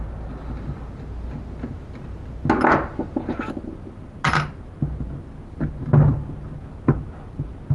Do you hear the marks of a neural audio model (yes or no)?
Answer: no